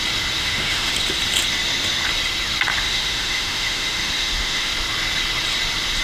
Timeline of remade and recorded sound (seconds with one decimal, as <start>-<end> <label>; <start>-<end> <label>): 0.0-0.4 recorded; 0.4-0.9 remade; 0.9-2.7 recorded; 2.7-4.7 remade; 4.7-6.0 recorded